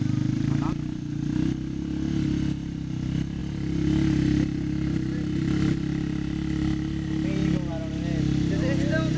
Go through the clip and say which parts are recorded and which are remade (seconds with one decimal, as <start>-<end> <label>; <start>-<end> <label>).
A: 0.0-9.2 recorded